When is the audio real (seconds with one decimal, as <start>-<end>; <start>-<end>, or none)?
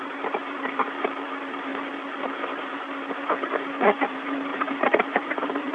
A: 1.7-2.2